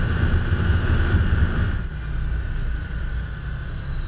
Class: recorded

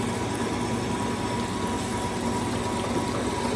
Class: recorded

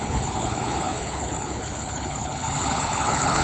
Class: remade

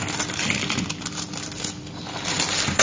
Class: recorded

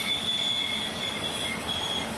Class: recorded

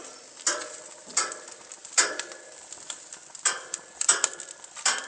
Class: recorded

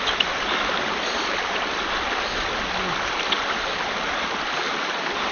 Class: recorded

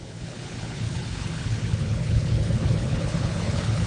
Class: remade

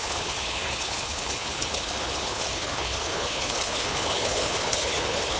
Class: remade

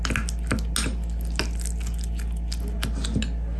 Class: recorded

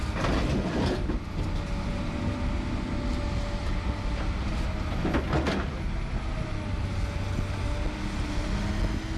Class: recorded